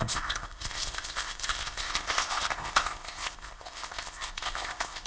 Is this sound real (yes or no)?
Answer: no